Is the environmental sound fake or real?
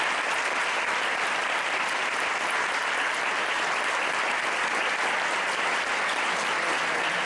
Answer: real